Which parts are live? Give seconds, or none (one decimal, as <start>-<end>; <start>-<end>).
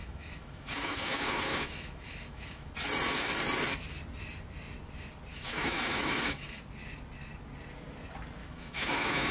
2.7-5.3; 6.6-8.4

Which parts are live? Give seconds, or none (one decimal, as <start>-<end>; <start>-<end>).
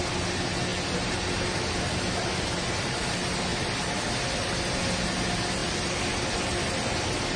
0.0-7.4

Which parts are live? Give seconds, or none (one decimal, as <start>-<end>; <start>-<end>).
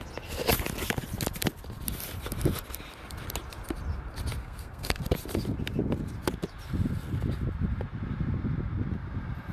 0.0-4.4; 5.0-9.5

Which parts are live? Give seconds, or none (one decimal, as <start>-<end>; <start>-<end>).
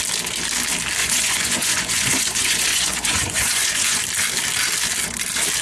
0.0-1.0; 4.0-5.6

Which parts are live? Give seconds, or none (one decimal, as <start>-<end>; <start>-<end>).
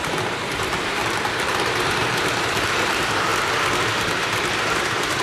1.0-1.7; 3.3-4.6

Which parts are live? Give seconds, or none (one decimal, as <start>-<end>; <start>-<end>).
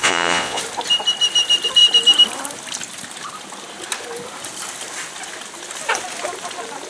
0.6-6.9